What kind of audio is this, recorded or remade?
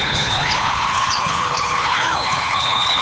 remade